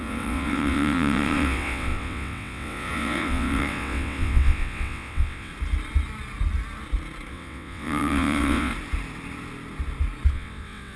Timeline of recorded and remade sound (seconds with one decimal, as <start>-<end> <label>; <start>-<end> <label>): 0.0-5.5 remade; 5.5-7.3 recorded; 7.3-8.7 remade; 8.7-10.3 recorded; 10.3-11.0 remade